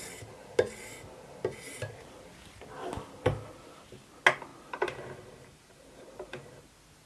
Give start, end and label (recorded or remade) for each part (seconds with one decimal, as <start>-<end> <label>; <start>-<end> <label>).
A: 0.0-4.5 recorded; 4.5-6.6 remade; 6.6-7.1 recorded